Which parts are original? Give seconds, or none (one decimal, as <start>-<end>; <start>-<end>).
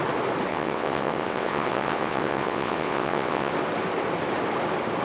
0.0-0.5; 3.5-5.0